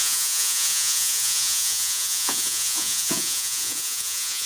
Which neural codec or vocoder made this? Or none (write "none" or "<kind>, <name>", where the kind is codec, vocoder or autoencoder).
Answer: vocoder, Vocos